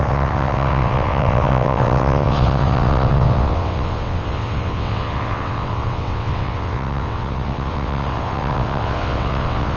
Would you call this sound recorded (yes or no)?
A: no